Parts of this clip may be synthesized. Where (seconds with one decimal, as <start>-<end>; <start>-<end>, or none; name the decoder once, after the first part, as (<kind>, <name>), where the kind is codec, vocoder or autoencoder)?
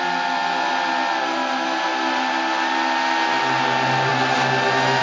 none